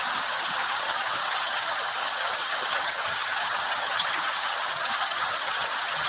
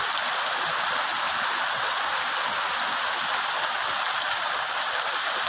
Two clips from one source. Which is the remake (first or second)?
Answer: first